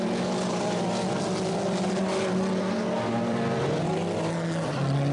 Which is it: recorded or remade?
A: recorded